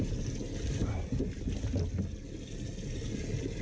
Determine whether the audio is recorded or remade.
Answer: recorded